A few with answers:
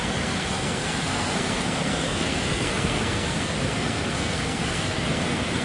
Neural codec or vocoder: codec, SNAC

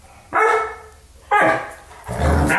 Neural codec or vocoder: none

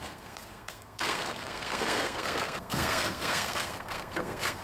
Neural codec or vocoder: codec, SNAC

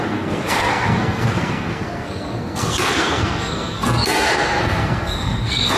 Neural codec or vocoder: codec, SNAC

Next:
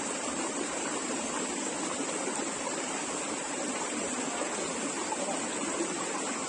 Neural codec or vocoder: none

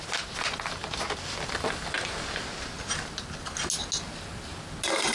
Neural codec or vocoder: none